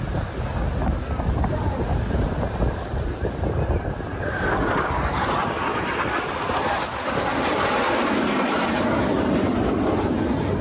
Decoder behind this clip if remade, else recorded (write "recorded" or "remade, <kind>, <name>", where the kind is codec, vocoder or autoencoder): recorded